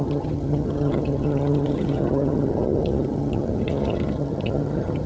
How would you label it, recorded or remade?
remade